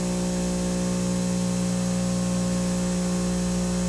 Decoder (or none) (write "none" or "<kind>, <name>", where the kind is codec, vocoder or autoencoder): none